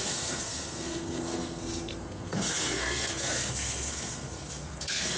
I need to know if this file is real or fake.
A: fake